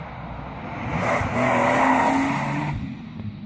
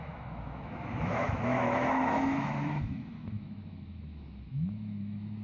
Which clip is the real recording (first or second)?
first